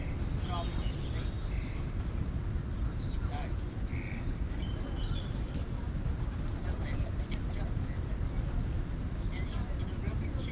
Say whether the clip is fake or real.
real